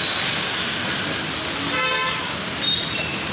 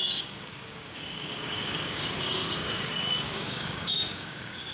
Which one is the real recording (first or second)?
first